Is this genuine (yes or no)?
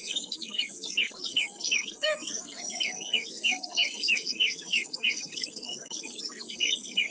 no